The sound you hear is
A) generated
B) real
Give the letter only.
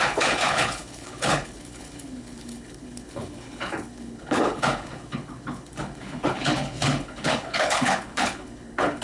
A